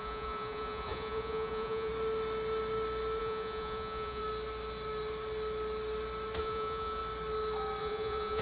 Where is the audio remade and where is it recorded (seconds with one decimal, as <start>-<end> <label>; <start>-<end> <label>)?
0.0-1.9 remade; 1.9-3.2 recorded; 3.2-4.2 remade; 4.2-6.4 recorded; 6.4-7.0 remade; 7.0-7.8 recorded; 7.8-8.4 remade